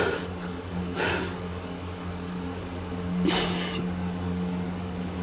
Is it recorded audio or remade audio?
remade